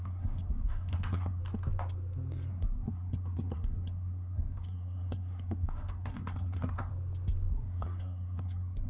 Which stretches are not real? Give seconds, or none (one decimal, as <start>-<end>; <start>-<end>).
0.0-1.4; 2.5-6.9; 7.5-8.9